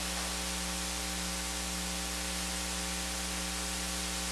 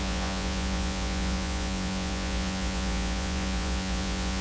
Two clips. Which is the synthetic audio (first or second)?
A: second